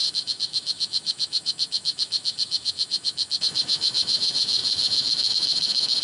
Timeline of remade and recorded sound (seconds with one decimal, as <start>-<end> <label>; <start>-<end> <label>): 0.0-6.0 remade